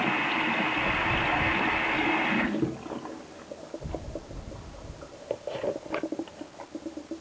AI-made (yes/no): no